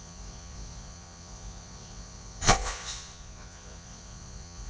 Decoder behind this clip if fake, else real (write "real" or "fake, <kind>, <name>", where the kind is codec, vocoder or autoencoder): fake, vocoder, Vocos